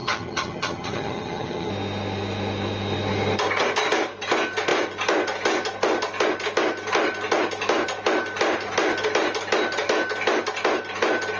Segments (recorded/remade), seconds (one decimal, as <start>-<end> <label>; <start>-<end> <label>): 0.0-1.7 remade; 1.7-11.4 recorded